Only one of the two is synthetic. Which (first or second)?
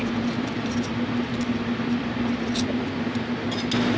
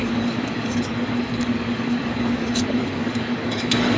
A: second